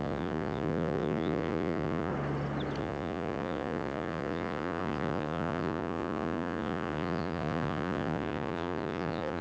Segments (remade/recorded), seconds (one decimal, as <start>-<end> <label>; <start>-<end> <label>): 0.0-2.1 remade; 2.1-2.8 recorded; 2.8-9.4 remade

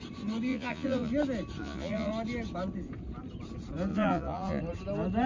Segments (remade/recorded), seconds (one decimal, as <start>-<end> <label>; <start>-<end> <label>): 0.0-0.5 recorded; 0.5-1.1 remade; 1.1-1.6 recorded; 1.6-2.1 remade; 2.1-3.9 recorded; 3.9-4.6 remade; 4.6-5.3 recorded

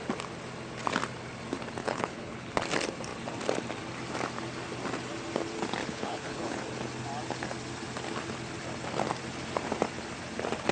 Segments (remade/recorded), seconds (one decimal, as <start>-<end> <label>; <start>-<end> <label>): 0.0-1.8 recorded; 1.8-2.5 remade; 2.5-5.8 recorded; 5.8-6.6 remade; 6.6-10.7 recorded

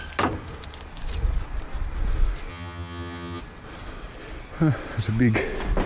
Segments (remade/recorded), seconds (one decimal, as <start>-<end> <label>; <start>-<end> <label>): 0.0-2.5 recorded; 2.5-3.4 remade; 3.4-5.9 recorded